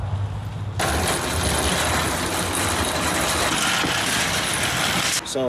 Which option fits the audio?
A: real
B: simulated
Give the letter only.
A